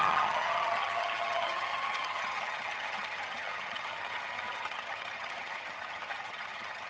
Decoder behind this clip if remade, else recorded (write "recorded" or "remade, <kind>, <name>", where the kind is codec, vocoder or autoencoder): remade, vocoder, HiFi-GAN